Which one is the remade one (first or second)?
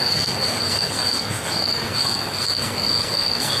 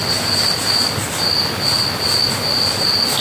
first